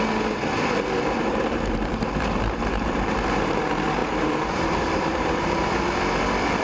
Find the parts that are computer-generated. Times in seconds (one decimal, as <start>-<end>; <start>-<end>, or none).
1.3-3.6; 4.0-5.8